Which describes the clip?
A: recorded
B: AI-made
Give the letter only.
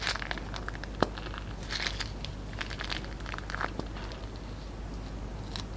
A